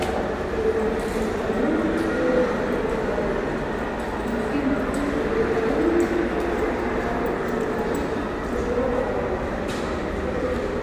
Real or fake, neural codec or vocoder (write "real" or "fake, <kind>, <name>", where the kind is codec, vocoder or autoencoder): real